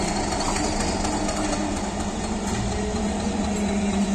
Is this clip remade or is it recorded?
recorded